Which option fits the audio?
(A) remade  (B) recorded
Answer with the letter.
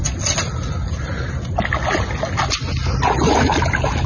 B